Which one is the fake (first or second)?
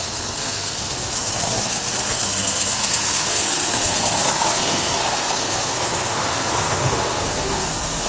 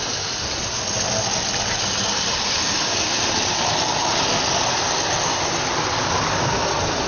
first